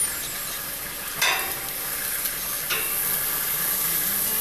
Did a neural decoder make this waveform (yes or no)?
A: no